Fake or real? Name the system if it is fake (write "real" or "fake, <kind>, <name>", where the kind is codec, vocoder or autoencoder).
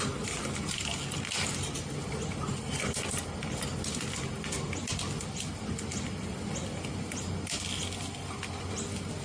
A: real